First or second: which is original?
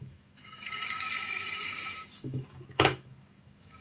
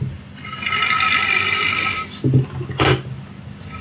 second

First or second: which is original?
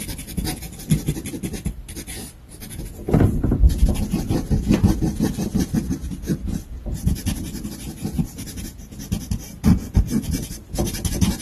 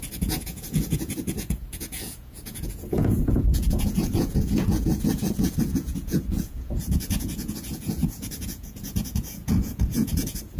first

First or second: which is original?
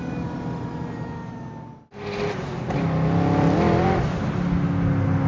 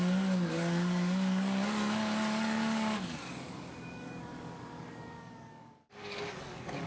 first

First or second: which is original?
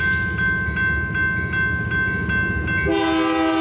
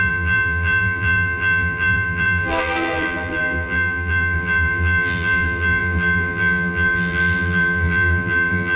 first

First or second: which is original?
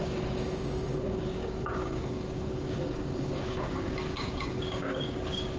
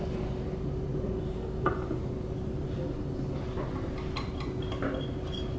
second